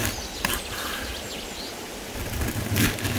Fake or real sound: real